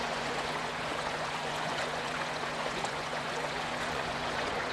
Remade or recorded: remade